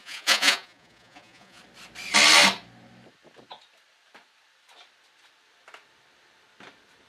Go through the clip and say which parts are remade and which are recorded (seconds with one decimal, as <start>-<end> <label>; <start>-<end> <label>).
0.0-1.6 remade; 1.6-7.1 recorded